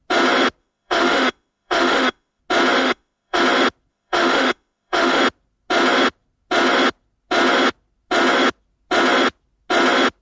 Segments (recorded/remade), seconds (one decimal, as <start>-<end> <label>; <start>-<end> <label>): 0.0-0.6 recorded; 0.6-2.4 remade; 2.4-2.8 recorded; 2.8-3.4 remade; 3.4-3.9 recorded; 3.9-5.2 remade; 5.2-10.2 recorded